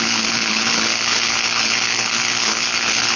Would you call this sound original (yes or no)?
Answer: no